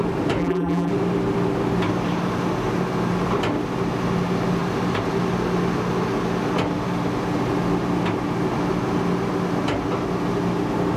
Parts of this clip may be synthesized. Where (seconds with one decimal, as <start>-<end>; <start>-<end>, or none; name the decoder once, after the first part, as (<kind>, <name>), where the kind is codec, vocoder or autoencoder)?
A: 0.4-0.9 (vocoder, BigVGAN v2)